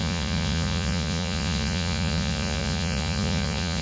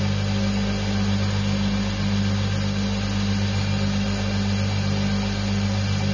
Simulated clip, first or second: first